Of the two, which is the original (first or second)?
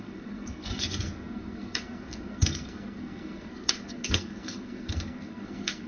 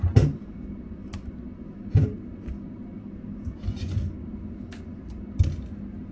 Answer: second